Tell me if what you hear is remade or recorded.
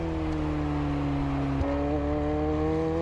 recorded